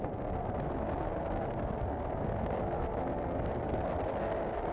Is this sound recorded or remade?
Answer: remade